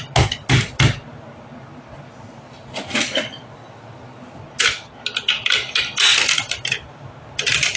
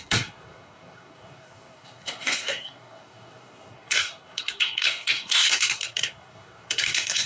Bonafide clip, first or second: first